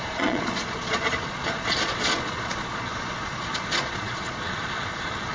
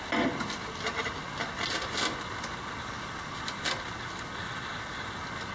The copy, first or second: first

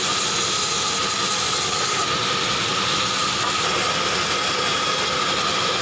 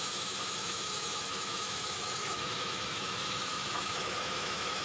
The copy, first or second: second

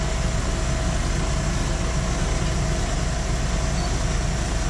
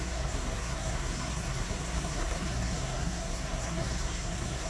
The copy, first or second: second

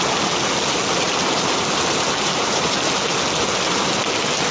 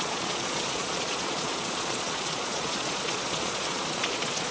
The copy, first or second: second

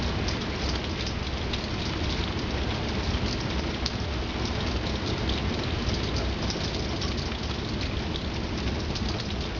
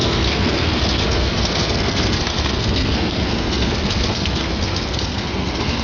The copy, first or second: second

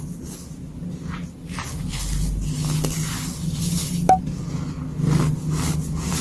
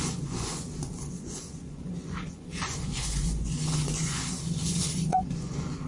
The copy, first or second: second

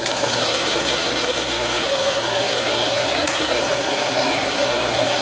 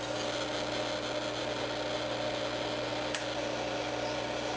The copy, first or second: first